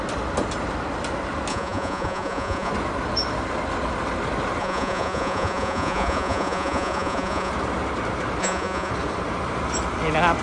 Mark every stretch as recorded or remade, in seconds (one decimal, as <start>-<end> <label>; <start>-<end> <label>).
0.0-1.5 recorded; 1.5-2.7 remade; 2.7-4.6 recorded; 4.6-7.5 remade; 7.5-8.4 recorded; 8.4-8.9 remade; 8.9-10.4 recorded